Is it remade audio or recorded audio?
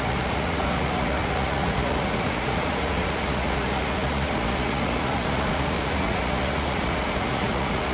remade